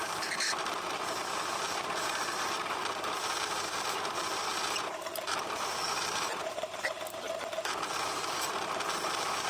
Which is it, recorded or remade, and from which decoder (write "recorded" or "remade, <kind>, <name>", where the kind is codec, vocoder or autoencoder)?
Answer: remade, vocoder, BigVGAN v2